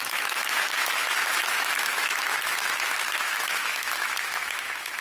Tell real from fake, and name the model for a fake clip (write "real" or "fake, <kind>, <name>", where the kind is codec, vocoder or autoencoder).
fake, autoencoder, DAC-VAE